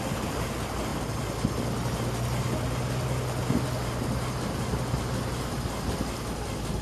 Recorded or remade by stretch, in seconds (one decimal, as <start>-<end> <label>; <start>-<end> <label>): 0.0-6.8 recorded

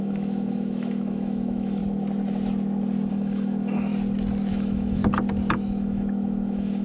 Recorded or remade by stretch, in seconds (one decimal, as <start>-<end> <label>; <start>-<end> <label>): 0.0-1.8 remade; 1.8-3.1 recorded; 3.1-3.9 remade; 3.9-4.5 recorded; 4.5-5.0 remade; 5.0-5.5 recorded; 5.5-6.8 remade

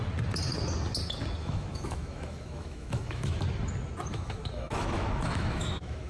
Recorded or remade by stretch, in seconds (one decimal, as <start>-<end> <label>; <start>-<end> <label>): 0.0-1.4 recorded; 1.4-3.4 remade; 3.4-4.1 recorded; 4.1-6.1 remade

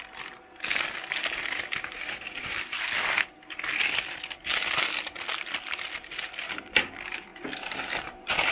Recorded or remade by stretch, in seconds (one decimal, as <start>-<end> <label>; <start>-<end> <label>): 0.0-8.5 recorded

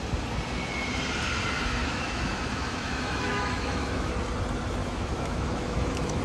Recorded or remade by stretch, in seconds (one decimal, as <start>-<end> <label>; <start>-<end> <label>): 0.0-1.8 recorded; 1.8-4.1 remade; 4.1-4.8 recorded; 4.8-6.2 remade

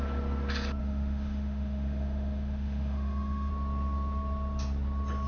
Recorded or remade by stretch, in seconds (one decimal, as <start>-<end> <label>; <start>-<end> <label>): 0.0-0.8 recorded; 0.8-3.5 remade; 3.5-5.3 recorded